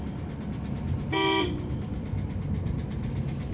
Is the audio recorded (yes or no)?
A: yes